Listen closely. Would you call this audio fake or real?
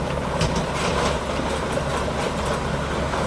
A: real